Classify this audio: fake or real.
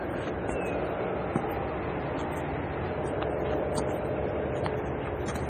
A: real